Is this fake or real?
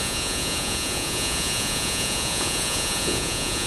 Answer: fake